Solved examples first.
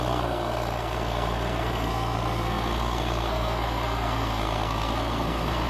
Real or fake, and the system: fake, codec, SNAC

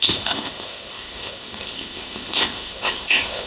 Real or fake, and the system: fake, codec, ZipCodec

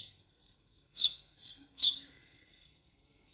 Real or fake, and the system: fake, codec, SNAC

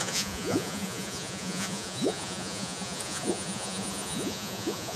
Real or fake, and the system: fake, vocoder, Vocos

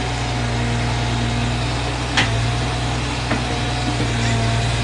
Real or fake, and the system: real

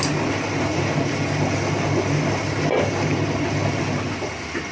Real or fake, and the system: real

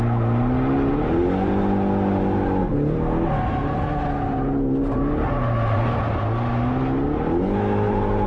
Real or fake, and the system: real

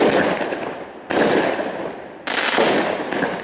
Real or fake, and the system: real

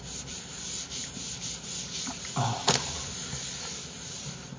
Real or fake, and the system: real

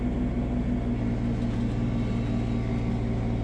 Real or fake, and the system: real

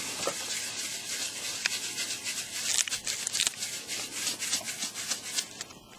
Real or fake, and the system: real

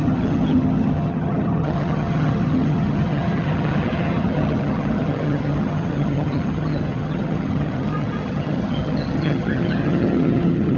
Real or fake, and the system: fake, vocoder, HiFi-GAN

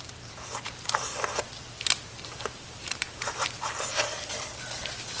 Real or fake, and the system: fake, vocoder, BigVGAN v2